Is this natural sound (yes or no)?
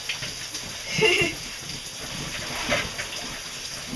yes